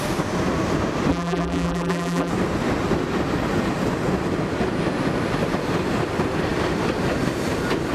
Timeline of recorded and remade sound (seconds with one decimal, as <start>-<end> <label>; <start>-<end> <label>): 0.0-1.1 recorded; 1.1-2.3 remade; 2.3-7.9 recorded